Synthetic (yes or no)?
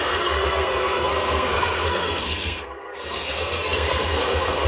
yes